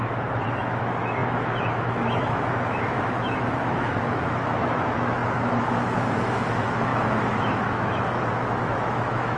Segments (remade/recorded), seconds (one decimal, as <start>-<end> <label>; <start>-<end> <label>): 0.0-9.4 remade